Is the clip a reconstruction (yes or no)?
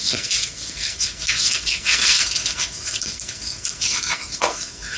yes